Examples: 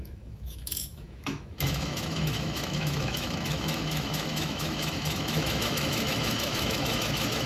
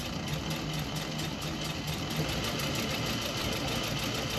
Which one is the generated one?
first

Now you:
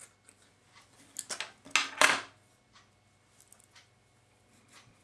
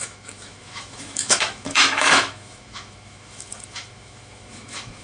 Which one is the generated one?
second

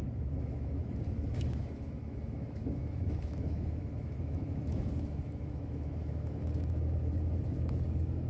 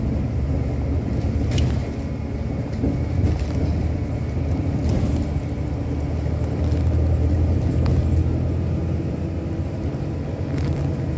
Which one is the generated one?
first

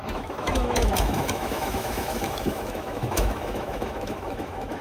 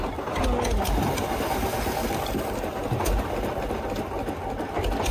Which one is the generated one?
first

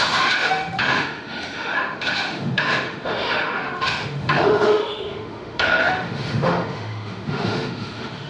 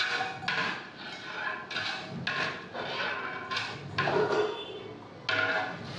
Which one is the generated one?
first